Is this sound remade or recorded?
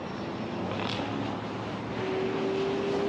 recorded